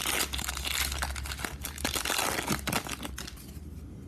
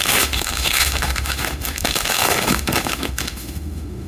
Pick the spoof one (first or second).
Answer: second